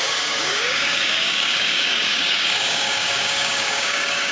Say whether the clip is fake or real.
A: fake